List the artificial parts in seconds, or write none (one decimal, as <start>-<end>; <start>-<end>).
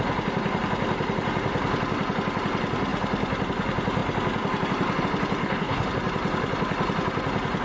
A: 5.4-5.9